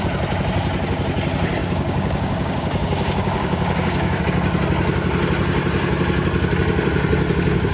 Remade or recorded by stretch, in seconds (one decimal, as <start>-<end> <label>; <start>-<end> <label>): 0.0-1.6 recorded; 1.6-4.2 remade; 4.2-7.7 recorded